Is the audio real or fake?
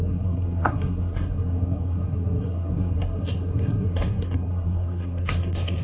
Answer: fake